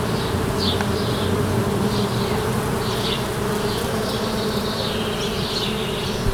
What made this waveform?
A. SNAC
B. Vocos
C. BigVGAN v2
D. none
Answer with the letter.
D